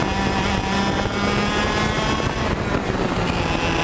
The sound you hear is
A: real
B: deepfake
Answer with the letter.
A